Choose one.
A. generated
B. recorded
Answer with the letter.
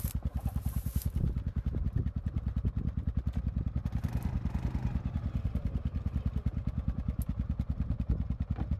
B